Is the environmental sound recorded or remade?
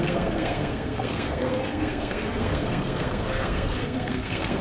remade